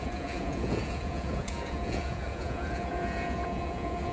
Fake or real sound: fake